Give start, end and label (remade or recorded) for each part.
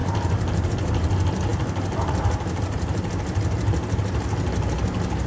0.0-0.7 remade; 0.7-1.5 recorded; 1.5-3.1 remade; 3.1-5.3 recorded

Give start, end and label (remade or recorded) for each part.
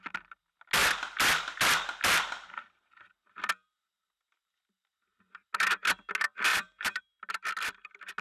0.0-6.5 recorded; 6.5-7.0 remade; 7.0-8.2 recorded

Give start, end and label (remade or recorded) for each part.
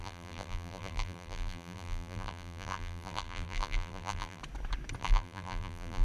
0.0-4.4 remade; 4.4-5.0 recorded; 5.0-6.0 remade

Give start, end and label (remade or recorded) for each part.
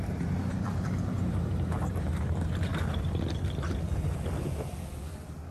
0.0-2.7 remade; 2.7-5.5 recorded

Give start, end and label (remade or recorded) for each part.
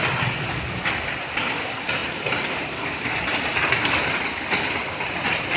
0.0-5.6 recorded